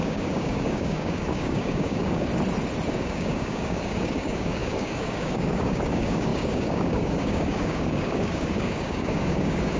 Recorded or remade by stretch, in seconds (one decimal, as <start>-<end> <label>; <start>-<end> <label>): 0.0-2.3 remade; 2.3-2.9 recorded; 2.9-9.8 remade